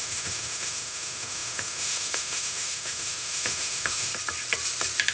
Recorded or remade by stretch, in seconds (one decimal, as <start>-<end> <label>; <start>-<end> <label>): 0.0-4.1 remade; 4.1-5.1 recorded